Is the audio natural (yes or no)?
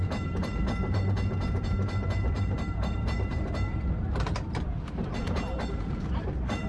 no